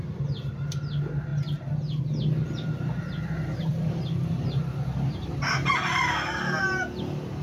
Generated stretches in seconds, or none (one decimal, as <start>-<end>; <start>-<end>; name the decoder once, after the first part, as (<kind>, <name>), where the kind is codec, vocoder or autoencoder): 3.7-5.4 (vocoder, BigVGAN v2)